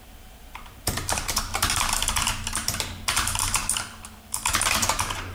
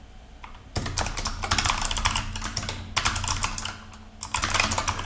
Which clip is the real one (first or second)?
second